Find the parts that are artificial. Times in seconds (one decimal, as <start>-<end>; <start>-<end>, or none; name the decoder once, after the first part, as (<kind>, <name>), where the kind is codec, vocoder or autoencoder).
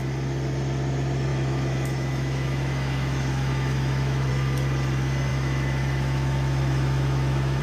1.3-4.3 (autoencoder, DAC-VAE); 5.3-7.6